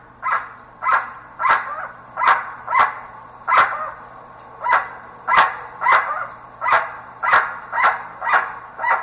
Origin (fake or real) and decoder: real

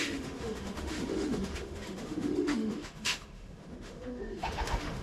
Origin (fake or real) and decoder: fake, autoencoder, DAC-VAE